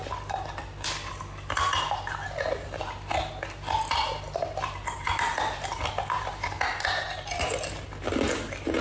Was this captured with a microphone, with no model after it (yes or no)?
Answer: yes